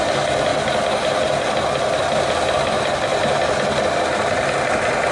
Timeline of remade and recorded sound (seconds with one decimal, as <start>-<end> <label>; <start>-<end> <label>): 0.0-0.5 recorded; 0.5-1.5 remade; 1.5-3.1 recorded; 3.1-4.0 remade; 4.0-5.1 recorded